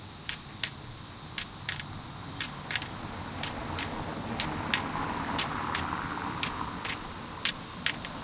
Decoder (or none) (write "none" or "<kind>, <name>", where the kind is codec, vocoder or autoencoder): none